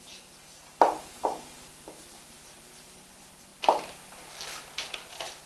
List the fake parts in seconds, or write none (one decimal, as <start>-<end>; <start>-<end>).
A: none